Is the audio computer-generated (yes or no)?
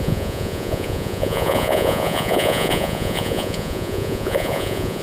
yes